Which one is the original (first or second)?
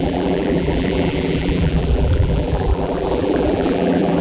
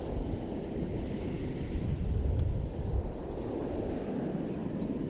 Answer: second